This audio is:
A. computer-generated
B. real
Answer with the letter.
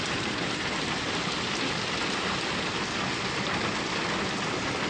B